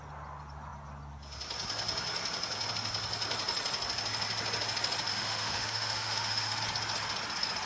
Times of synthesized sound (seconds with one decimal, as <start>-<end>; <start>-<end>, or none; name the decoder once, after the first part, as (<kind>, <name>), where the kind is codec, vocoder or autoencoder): 5.1-6.6 (autoencoder, DAC-VAE)